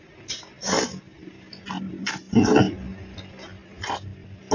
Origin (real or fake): real